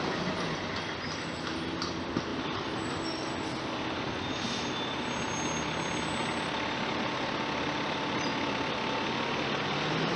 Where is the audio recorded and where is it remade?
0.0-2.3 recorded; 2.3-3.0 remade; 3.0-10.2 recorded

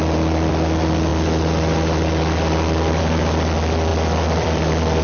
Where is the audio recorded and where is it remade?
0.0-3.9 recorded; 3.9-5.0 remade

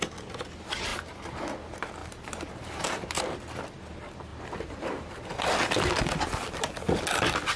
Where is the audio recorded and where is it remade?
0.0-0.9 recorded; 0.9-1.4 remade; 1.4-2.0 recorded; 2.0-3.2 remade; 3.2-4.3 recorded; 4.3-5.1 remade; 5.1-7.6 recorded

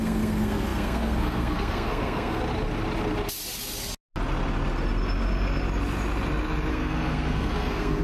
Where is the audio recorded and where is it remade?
0.0-2.4 remade; 2.4-6.7 recorded; 6.7-8.0 remade

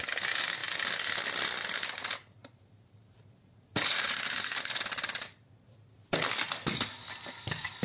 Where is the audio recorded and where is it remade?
0.0-2.4 recorded; 2.4-4.2 remade; 4.2-7.8 recorded